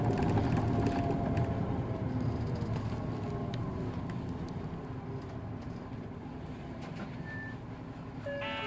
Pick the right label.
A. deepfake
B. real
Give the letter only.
B